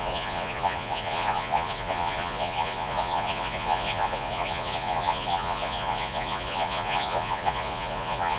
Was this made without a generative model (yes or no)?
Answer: no